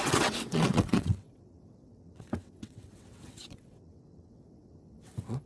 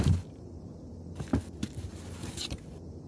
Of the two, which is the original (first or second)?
second